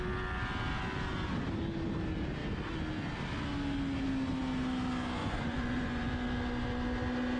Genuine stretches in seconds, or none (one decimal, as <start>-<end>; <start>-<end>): 0.0-5.2; 6.1-7.4